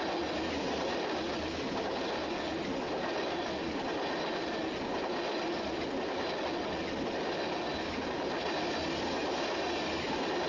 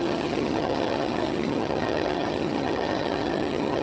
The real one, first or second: first